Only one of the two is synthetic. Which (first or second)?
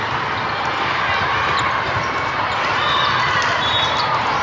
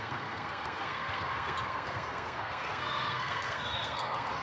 second